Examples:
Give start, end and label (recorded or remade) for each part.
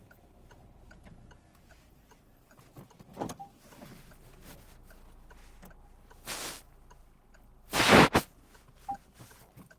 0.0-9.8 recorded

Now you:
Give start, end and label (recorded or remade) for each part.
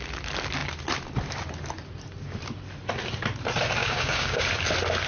0.0-3.8 recorded; 3.8-4.4 remade; 4.4-5.1 recorded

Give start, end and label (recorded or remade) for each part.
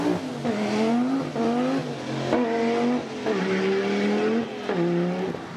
0.0-5.6 recorded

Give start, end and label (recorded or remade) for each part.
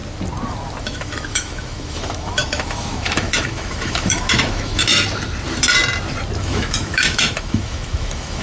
0.0-0.8 recorded; 0.8-4.9 remade; 4.9-6.4 recorded; 6.4-8.4 remade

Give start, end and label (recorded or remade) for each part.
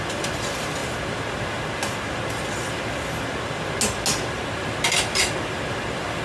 0.0-6.2 recorded